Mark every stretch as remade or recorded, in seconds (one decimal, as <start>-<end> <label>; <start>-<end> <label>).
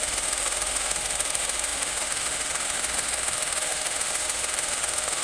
0.0-5.2 remade